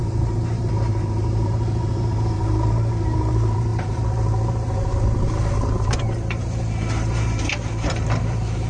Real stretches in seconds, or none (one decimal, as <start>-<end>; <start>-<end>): none